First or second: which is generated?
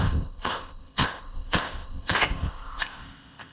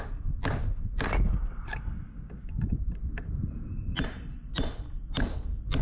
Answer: first